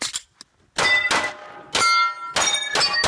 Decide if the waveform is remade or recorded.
recorded